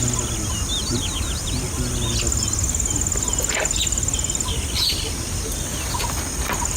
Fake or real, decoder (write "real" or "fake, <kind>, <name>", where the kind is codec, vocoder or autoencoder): real